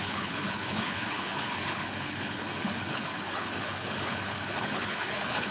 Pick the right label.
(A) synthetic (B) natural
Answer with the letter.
A